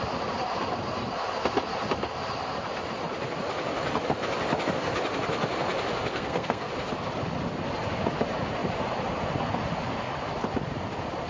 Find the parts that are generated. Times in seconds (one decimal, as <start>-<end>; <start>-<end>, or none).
6.1-6.7